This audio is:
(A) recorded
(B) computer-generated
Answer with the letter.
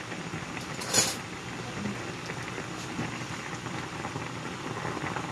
A